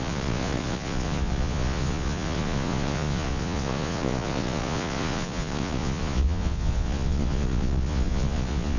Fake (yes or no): yes